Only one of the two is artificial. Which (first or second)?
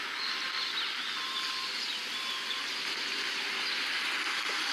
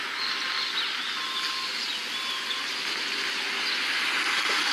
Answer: first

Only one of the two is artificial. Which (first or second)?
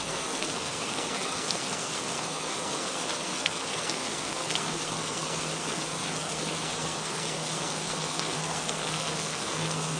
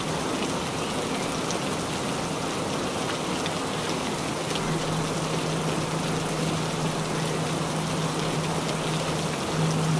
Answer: first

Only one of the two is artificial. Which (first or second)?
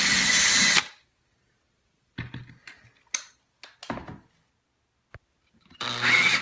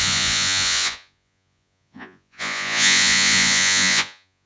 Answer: second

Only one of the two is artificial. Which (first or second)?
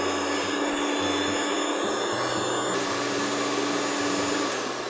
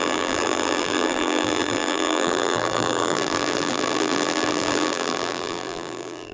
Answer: second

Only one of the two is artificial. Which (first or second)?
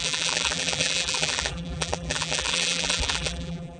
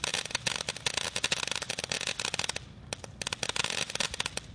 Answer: first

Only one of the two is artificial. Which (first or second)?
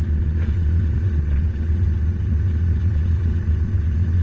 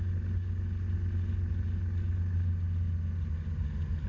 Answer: first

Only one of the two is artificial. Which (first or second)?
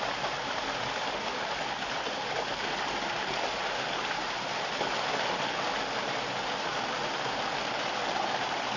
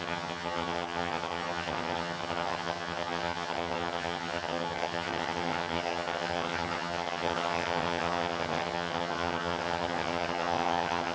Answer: second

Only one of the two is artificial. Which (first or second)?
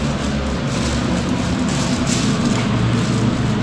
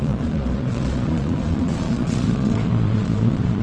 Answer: second